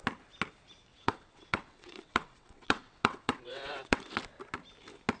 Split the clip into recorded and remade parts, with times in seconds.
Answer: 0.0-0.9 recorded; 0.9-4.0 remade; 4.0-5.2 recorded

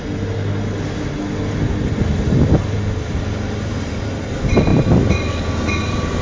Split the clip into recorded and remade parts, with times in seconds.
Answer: 0.0-6.2 recorded

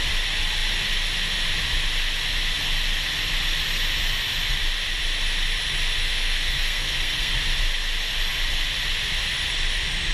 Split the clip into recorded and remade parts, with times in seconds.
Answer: 0.0-6.0 recorded; 6.0-7.3 remade; 7.3-10.1 recorded